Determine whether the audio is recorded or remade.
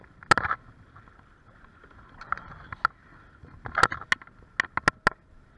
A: recorded